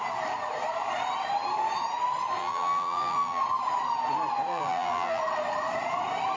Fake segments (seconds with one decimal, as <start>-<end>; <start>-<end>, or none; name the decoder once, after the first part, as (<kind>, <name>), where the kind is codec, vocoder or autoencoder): 2.4-3.4 (vocoder, BigVGAN v2); 4.5-5.2